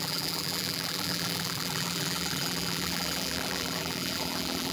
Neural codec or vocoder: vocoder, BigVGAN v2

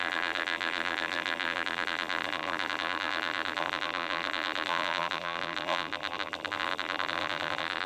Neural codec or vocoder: vocoder, BigVGAN v2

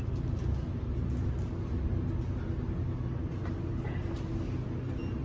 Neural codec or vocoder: none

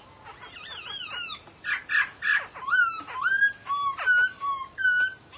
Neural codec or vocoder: none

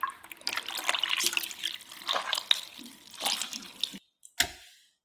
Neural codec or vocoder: none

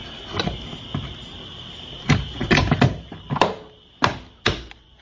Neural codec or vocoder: none